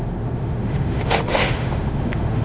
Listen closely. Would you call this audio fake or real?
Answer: fake